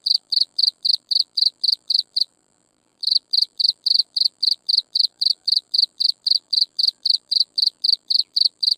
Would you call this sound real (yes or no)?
no